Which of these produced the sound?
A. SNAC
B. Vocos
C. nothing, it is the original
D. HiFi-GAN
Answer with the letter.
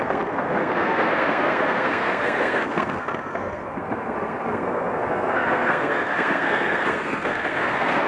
A